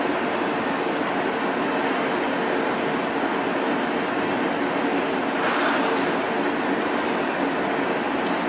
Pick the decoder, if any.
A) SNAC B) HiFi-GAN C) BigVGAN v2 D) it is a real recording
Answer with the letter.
D